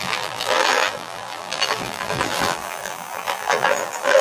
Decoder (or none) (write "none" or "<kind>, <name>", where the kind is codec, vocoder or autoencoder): vocoder, BigVGAN v2